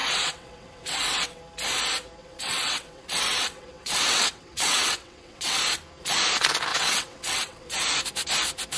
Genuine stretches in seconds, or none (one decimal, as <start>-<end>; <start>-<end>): 1.4-2.2; 5.6-6.7; 7.7-8.8